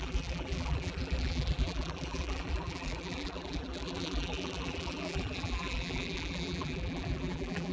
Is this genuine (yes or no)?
no